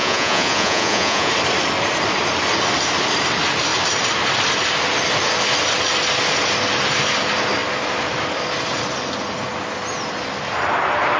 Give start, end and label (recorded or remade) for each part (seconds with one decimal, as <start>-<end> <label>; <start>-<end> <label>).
0.0-1.3 remade; 1.3-11.2 recorded